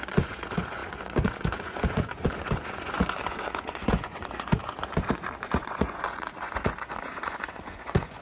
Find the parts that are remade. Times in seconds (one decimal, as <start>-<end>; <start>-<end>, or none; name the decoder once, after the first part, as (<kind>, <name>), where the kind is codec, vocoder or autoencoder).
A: 0.0-8.2 (vocoder, Vocos)